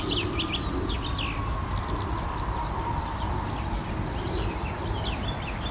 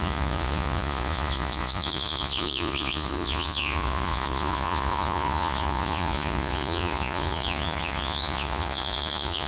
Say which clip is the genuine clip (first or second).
first